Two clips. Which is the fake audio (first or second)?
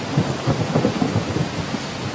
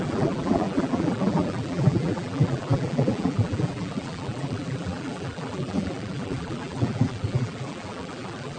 second